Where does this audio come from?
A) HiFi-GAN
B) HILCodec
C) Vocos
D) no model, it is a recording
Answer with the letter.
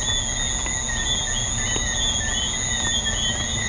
D